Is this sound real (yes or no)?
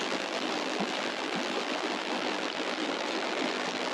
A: no